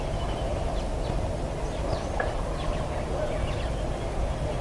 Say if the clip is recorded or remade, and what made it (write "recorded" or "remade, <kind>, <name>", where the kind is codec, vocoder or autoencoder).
recorded